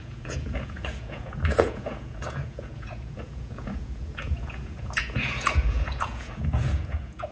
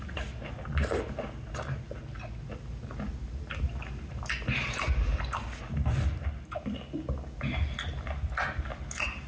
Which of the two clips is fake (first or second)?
first